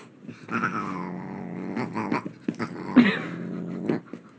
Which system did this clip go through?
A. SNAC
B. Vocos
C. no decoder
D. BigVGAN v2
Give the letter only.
C